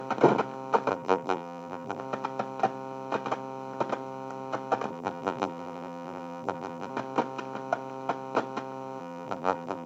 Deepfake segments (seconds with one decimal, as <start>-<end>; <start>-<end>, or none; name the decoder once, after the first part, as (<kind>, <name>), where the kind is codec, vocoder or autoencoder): 0.9-2.0 (vocoder, BigVGAN v2); 4.9-6.9; 9.0-9.9